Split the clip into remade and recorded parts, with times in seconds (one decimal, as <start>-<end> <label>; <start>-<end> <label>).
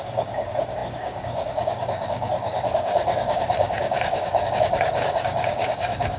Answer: 0.0-6.2 remade